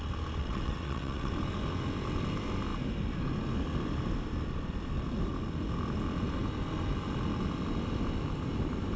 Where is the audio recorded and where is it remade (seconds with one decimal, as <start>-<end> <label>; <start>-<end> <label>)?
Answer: 0.0-0.4 recorded; 0.4-1.3 remade; 1.3-9.0 recorded